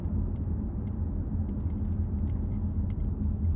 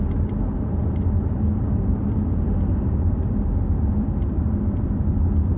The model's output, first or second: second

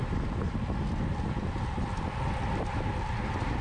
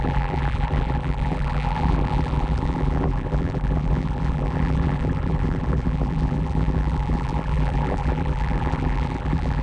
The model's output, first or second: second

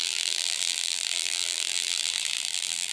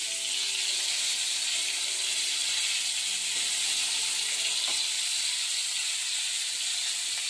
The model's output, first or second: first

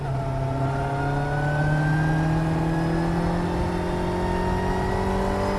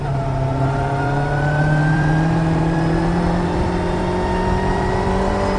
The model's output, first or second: second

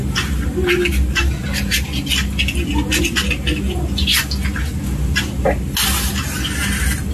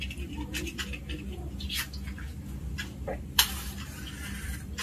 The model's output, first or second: second